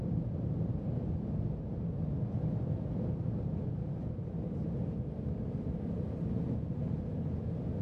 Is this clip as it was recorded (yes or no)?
no